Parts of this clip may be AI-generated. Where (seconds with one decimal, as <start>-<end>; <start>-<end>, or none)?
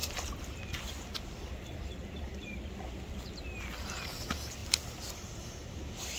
2.0-2.6